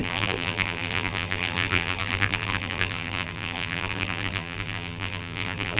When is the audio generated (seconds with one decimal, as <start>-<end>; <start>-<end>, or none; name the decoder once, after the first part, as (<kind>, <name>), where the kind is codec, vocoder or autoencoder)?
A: 0.0-5.8 (vocoder, BigVGAN v2)